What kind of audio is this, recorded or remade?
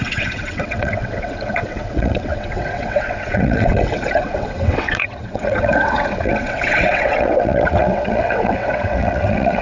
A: remade